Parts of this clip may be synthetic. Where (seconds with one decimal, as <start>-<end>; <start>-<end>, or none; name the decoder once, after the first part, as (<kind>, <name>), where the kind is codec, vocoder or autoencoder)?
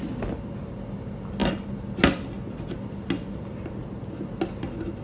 none